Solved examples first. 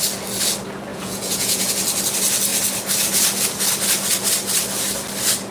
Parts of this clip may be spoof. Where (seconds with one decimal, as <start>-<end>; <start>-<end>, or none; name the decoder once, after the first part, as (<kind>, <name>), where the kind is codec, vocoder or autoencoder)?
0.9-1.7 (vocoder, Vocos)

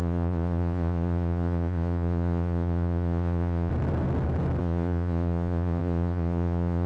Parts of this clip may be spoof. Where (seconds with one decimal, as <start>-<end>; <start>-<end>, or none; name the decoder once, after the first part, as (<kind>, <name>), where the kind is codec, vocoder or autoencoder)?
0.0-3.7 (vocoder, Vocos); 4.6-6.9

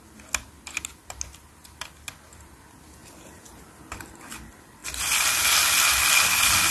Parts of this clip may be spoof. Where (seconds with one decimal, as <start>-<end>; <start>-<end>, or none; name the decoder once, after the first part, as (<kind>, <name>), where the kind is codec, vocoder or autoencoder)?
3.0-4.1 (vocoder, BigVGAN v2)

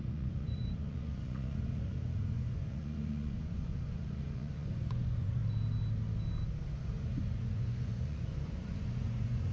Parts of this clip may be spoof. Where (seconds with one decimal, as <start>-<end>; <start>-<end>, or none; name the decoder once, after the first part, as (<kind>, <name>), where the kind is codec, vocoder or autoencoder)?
0.0-5.4 (vocoder, Vocos); 6.8-9.5

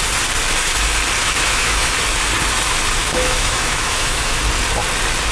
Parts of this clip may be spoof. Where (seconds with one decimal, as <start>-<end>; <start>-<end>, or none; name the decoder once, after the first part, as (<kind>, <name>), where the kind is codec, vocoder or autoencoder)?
1.2-2.0 (autoencoder, DAC-VAE); 3.0-4.4

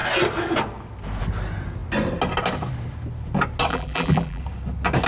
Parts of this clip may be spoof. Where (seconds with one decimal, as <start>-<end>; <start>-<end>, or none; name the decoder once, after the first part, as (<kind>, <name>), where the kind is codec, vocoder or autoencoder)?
3.7-4.4 (vocoder, BigVGAN v2)

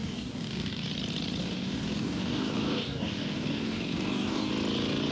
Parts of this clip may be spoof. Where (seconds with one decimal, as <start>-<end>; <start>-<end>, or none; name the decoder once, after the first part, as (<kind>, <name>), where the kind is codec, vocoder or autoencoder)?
0.0-0.9 (codec, DAC); 1.4-4.5